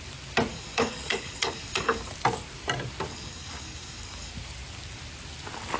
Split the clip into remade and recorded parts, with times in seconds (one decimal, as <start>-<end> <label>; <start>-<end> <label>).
0.0-0.5 recorded; 0.5-2.1 remade; 2.1-3.1 recorded; 3.1-4.3 remade; 4.3-5.8 recorded